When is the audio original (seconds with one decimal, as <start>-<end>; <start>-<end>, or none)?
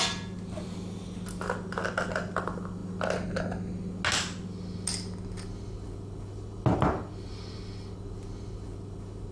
0.0-9.3